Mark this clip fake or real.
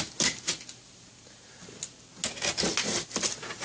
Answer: real